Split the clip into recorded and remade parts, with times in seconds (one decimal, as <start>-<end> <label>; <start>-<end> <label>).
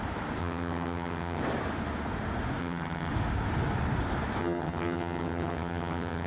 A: 0.0-0.4 recorded; 0.4-1.4 remade; 1.4-2.6 recorded; 2.6-3.1 remade; 3.1-4.4 recorded; 4.4-6.3 remade